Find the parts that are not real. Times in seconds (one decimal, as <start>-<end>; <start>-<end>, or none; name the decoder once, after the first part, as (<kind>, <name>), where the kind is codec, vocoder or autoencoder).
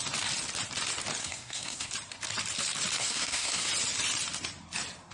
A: 1.2-1.9 (codec, SNAC); 3.0-3.7